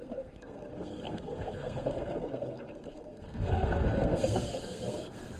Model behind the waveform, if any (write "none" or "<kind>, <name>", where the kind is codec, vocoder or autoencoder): codec, SNAC